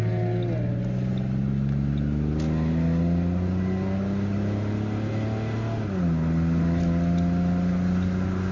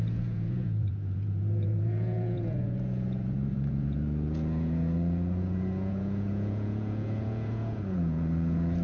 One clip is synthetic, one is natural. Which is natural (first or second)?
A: first